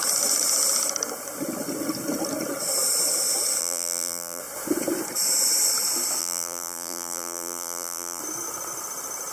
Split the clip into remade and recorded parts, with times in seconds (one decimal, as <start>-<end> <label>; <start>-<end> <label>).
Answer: 0.0-3.6 recorded; 3.6-4.4 remade; 4.4-6.2 recorded; 6.2-8.2 remade; 8.2-9.3 recorded